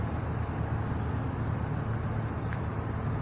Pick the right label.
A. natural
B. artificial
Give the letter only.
A